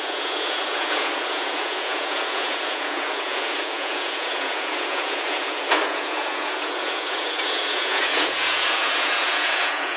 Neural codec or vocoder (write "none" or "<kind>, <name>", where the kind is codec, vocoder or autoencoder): vocoder, Vocos